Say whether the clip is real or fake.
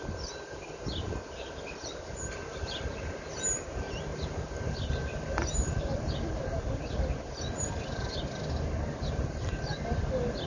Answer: real